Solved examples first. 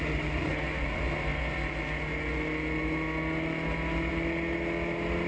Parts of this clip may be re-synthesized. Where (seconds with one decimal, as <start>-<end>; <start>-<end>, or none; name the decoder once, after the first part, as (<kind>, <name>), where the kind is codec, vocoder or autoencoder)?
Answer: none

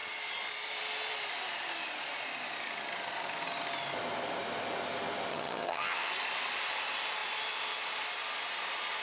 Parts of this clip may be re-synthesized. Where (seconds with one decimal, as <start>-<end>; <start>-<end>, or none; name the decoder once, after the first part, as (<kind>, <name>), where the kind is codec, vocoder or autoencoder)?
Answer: 5.3-6.1 (vocoder, HiFi-GAN)

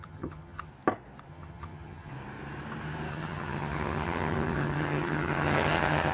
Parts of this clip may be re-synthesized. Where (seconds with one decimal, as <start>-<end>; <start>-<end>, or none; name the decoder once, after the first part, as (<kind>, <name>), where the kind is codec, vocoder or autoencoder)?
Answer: 0.0-0.7 (vocoder, HiFi-GAN); 1.3-2.1; 3.1-6.1